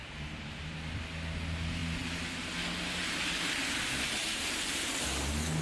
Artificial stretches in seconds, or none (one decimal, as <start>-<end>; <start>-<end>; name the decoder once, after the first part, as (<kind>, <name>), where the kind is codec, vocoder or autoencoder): 0.0-0.7 (vocoder, BigVGAN v2); 4.2-4.9